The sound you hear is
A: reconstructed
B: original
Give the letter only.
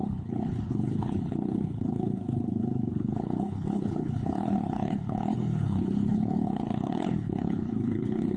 A